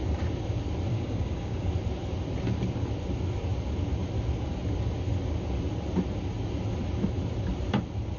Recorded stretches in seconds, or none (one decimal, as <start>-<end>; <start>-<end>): 0.0-0.9; 1.7-8.2